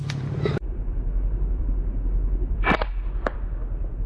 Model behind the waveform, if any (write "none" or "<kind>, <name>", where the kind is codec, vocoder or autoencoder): vocoder, BigVGAN v2